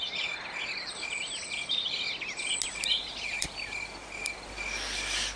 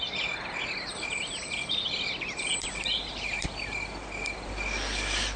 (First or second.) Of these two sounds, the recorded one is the first